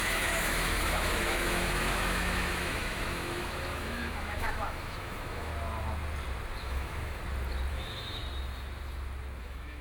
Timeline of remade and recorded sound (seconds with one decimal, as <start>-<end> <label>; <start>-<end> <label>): 0.0-5.5 remade; 5.5-6.6 recorded; 6.6-7.2 remade; 7.2-7.7 recorded; 7.7-8.2 remade; 8.2-9.4 recorded; 9.4-9.8 remade